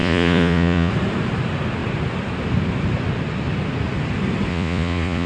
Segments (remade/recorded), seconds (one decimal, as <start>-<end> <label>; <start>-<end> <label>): 0.0-0.9 remade; 0.9-4.5 recorded; 4.5-5.3 remade